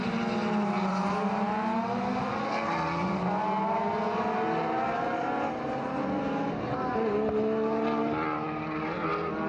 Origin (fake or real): real